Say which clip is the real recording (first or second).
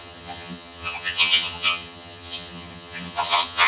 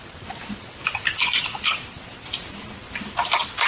second